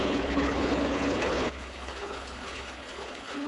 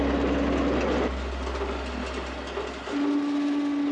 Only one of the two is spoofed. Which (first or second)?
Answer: first